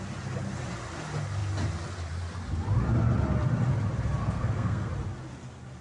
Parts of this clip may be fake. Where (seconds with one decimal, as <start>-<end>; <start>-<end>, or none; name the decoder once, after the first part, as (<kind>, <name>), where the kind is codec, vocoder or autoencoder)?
4.2-4.9 (codec, SNAC)